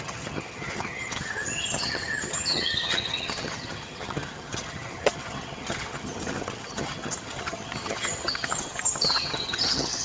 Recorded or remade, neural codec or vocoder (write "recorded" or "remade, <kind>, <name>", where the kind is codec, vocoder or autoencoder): remade, vocoder, HiFi-GAN